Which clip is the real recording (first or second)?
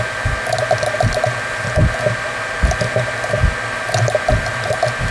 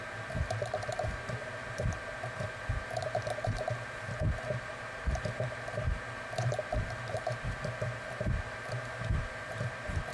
first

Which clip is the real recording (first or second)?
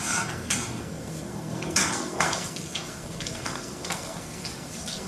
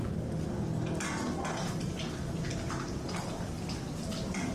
second